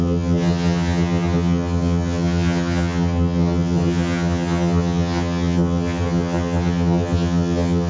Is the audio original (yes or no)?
no